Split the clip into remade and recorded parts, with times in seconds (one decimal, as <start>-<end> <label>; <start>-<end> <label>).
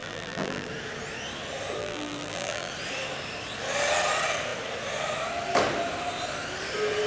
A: 0.0-0.7 remade; 0.7-1.8 recorded; 1.8-2.7 remade; 2.7-7.1 recorded